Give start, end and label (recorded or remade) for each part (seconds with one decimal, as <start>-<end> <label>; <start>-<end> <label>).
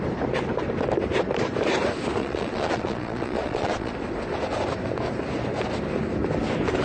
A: 0.0-2.2 recorded; 2.2-3.9 remade; 3.9-6.8 recorded